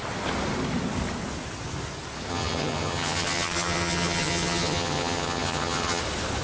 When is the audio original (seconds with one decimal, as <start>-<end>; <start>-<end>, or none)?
0.0-2.3; 6.0-6.4